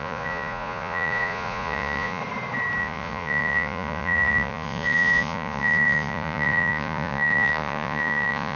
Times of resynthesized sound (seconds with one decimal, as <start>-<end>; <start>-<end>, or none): 0.0-2.2; 2.8-8.6

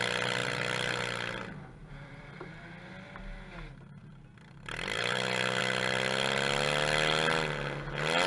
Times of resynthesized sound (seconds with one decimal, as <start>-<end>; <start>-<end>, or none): 1.8-3.2; 4.0-5.6

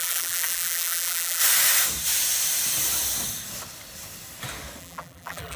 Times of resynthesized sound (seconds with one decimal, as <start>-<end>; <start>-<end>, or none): 0.0-1.4; 4.8-5.6

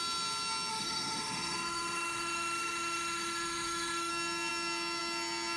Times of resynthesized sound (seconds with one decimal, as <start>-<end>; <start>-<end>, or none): 0.7-4.1

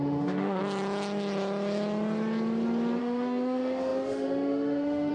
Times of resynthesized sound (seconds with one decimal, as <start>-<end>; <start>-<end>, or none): 0.0-0.6; 3.0-5.1

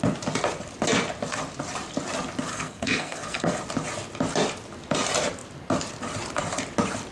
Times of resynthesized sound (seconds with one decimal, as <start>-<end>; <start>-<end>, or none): 2.5-3.6